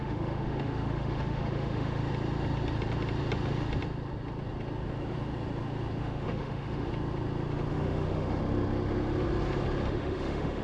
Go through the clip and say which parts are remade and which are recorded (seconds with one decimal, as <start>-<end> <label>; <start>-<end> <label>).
0.0-2.0 remade; 2.0-6.0 recorded; 6.0-6.9 remade; 6.9-7.7 recorded; 7.7-8.4 remade; 8.4-9.9 recorded; 9.9-10.6 remade